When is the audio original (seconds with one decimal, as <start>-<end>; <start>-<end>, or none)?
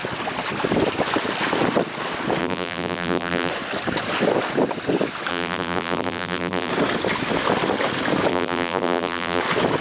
0.0-2.4; 3.5-5.3; 6.7-8.3; 9.4-9.8